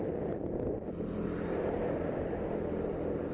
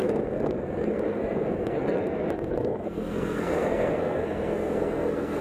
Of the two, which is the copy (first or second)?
second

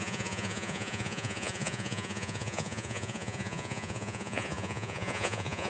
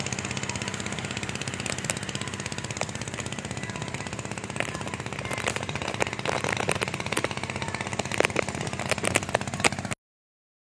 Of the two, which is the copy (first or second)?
first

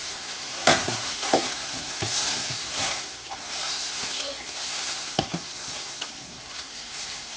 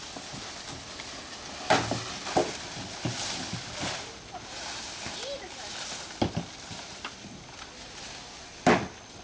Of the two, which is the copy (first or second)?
first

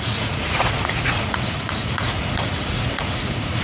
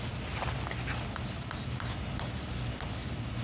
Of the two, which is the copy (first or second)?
first